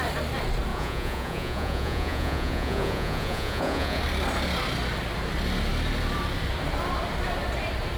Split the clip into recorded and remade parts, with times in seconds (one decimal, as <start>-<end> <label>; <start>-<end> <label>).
0.0-0.7 recorded; 0.7-4.0 remade; 4.0-8.0 recorded